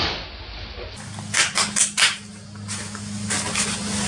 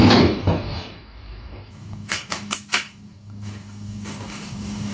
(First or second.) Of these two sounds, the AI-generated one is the second